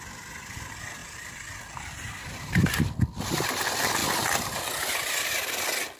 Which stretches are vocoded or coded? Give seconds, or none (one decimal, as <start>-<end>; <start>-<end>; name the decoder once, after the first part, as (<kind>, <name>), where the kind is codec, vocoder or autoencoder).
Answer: 1.0-3.2 (vocoder, BigVGAN v2)